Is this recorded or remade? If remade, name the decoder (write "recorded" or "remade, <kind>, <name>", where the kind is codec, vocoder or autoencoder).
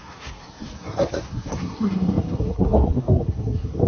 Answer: remade, codec, SNAC